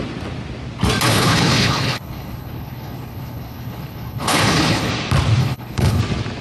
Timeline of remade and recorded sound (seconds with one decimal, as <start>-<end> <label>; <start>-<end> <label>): 0.0-1.1 recorded; 1.1-4.9 remade; 4.9-5.4 recorded; 5.4-6.0 remade; 6.0-6.4 recorded